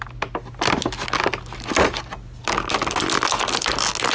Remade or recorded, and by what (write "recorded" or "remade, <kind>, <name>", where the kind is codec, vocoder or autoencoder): recorded